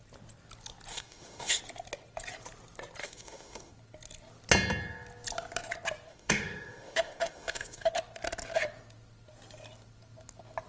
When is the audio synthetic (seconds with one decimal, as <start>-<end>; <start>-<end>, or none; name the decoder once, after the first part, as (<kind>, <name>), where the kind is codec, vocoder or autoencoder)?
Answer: 0.9-1.6 (autoencoder, DAC-VAE); 3.0-3.7; 6.1-7.9